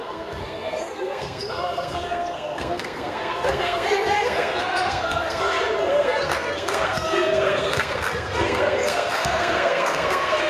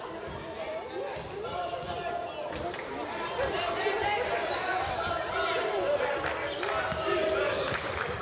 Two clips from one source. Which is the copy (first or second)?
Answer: first